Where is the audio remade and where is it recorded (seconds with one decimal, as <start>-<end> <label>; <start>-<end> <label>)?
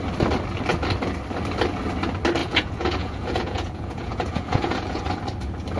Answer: 0.0-2.4 recorded; 2.4-5.0 remade; 5.0-5.8 recorded